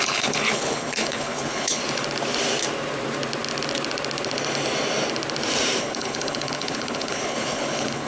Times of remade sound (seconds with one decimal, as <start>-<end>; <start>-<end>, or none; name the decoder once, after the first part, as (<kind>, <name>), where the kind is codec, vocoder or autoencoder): 0.0-1.8 (codec, HILCodec); 5.8-8.1